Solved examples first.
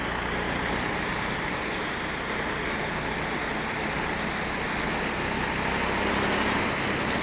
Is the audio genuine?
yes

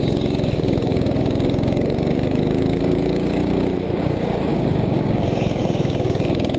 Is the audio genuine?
no